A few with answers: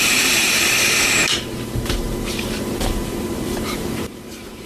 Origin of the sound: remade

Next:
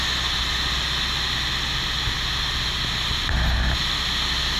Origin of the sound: recorded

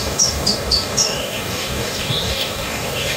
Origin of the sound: remade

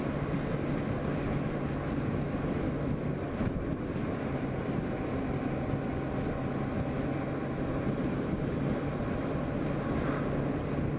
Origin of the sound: recorded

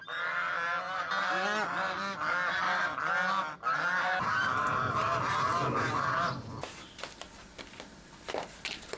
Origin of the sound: recorded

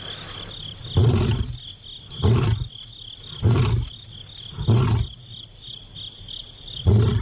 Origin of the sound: recorded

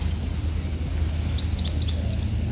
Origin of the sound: recorded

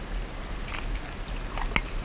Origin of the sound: recorded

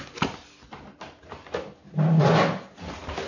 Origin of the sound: recorded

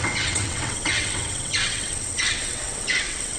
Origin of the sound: remade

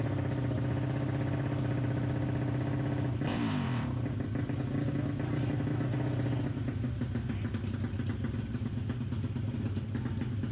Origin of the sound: recorded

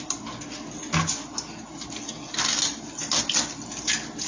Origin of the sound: recorded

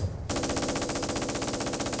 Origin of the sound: recorded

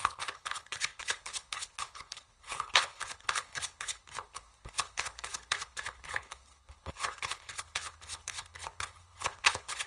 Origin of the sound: remade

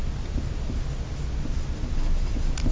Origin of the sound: recorded